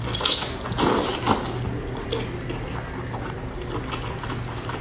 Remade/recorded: recorded